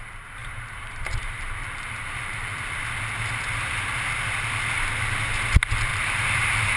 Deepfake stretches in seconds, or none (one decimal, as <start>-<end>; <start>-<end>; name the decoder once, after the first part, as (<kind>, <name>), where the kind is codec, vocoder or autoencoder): 0.4-2.5 (vocoder, BigVGAN v2); 5.9-6.8